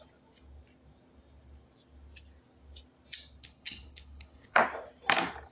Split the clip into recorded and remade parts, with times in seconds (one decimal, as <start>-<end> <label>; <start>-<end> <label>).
0.0-3.4 recorded; 3.4-4.6 remade; 4.6-5.5 recorded